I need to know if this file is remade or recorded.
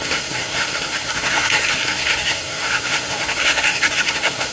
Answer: remade